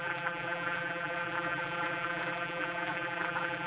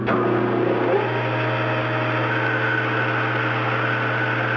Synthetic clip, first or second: first